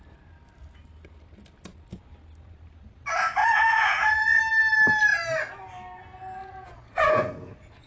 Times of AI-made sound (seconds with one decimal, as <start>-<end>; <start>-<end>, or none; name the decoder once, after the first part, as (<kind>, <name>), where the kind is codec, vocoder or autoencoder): 3.4-4.4 (vocoder, Vocos); 6.4-7.9